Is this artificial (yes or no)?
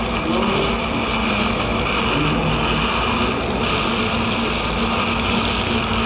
no